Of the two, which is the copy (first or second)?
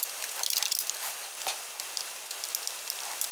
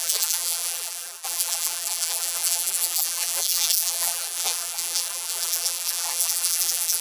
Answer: second